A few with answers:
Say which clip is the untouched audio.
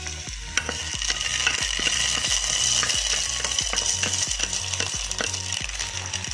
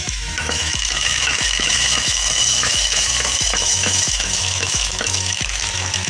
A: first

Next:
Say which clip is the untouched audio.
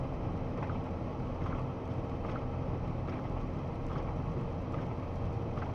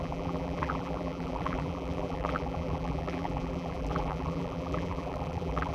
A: first